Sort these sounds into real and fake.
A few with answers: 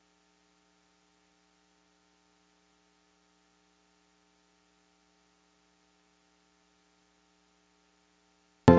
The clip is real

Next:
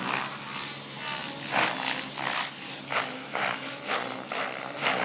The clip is real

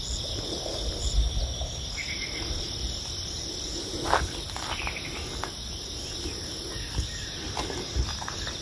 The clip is real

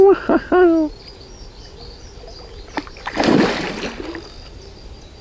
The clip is real